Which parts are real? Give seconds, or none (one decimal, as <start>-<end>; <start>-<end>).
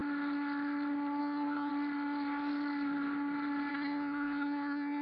0.0-1.2; 1.7-3.7